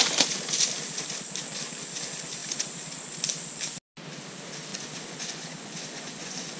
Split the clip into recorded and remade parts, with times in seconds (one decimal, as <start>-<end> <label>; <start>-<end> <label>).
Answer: 0.0-4.7 recorded; 4.7-6.6 remade